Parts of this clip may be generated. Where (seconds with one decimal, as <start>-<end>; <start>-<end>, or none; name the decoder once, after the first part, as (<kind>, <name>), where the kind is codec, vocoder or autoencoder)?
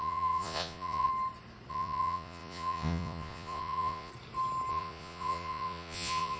0.0-1.1 (vocoder, Vocos); 1.7-4.1; 4.7-6.4